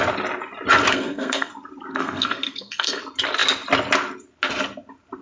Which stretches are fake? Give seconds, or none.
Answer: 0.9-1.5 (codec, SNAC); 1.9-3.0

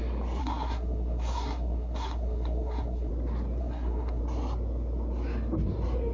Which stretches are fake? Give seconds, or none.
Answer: 0.4-3.1 (codec, SNAC); 3.6-4.2

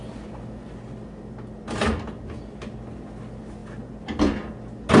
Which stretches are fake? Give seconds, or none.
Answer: none

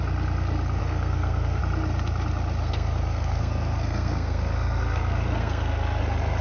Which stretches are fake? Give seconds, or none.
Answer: 0.8-1.6 (codec, SNAC); 2.6-6.0

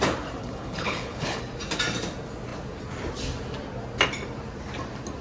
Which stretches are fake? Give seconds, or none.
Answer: 0.4-1.4 (codec, HILCodec)

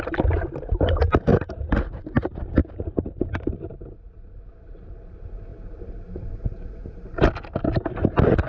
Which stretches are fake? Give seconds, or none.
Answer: 2.6-3.8 (vocoder, BigVGAN v2)

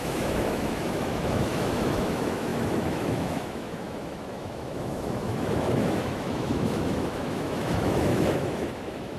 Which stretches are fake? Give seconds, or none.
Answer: 0.0-9.2 (autoencoder, DAC-VAE)

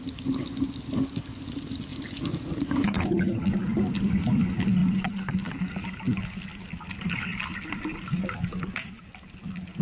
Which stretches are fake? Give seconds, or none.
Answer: none